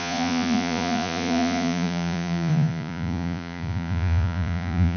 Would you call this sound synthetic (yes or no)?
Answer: yes